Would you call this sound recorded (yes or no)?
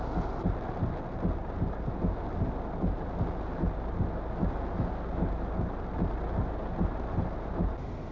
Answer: yes